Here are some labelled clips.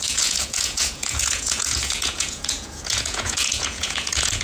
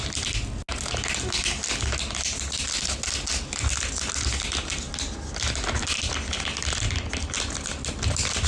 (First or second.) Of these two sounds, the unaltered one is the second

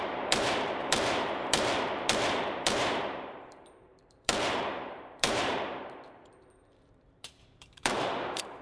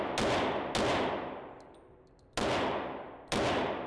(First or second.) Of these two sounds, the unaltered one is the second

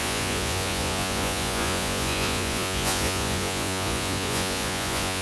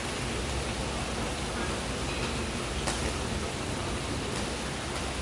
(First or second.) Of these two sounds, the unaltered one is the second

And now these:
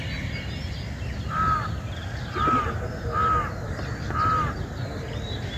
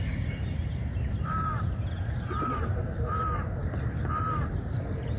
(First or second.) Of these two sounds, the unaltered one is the first